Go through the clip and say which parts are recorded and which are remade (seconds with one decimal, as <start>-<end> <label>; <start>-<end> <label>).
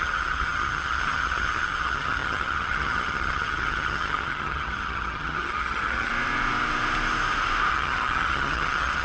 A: 0.0-6.1 remade; 6.1-7.7 recorded; 7.7-9.0 remade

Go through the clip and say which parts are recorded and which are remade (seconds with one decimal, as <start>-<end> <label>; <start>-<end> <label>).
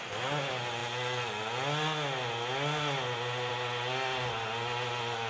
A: 0.0-5.3 recorded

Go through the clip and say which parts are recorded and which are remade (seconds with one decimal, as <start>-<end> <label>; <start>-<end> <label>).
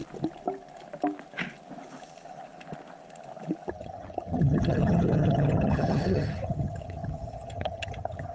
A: 0.0-3.7 recorded; 3.7-8.3 remade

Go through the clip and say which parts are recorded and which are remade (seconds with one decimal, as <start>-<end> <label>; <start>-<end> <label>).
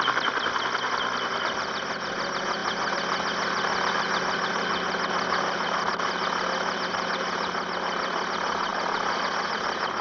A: 0.0-10.0 recorded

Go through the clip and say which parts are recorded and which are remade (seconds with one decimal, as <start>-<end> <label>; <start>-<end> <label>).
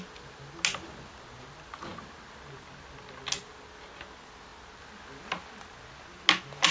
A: 0.0-6.7 recorded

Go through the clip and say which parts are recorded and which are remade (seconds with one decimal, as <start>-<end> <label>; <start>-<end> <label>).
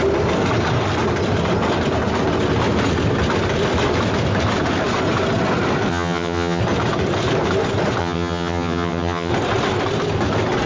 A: 0.0-5.9 recorded; 5.9-6.6 remade; 6.6-8.0 recorded; 8.0-9.3 remade; 9.3-10.7 recorded